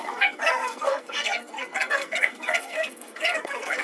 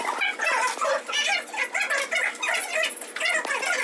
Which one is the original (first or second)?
second